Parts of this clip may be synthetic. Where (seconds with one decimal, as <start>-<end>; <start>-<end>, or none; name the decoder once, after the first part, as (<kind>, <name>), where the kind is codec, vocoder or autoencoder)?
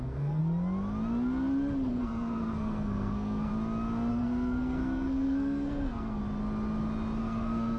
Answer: 0.0-0.4 (codec, SNAC); 1.9-3.5; 4.1-6.2; 7.2-7.8